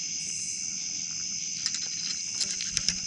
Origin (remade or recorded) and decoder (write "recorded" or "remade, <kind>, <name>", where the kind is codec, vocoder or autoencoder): recorded